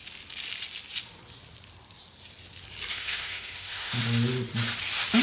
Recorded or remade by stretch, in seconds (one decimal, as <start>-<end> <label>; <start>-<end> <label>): 0.0-2.9 recorded; 2.9-4.0 remade; 4.0-5.2 recorded